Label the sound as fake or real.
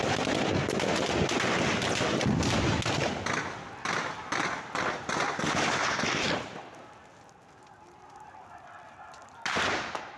real